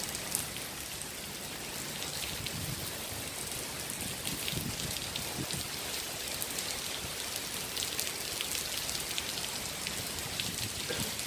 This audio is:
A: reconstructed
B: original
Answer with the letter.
B